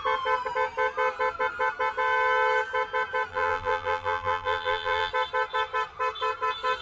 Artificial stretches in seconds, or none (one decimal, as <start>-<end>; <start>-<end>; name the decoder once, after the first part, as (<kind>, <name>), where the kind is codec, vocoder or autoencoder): 3.3-5.1 (vocoder, BigVGAN v2)